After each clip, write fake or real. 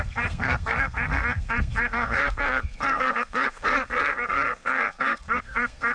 fake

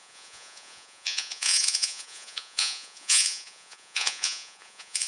fake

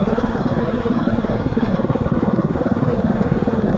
fake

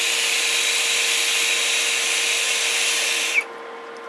real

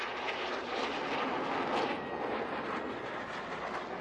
real